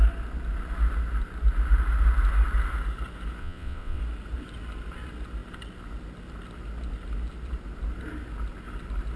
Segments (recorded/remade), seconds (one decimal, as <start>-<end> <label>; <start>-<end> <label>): 0.0-3.4 recorded; 3.4-4.0 remade; 4.0-9.2 recorded